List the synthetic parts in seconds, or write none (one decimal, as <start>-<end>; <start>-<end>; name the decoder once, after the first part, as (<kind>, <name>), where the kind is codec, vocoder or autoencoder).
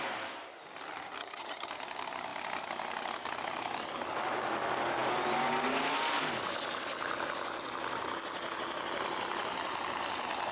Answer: 1.2-1.7 (vocoder, HiFi-GAN)